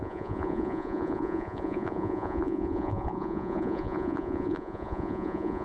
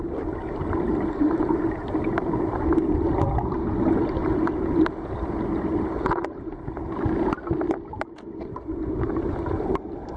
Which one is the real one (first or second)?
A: second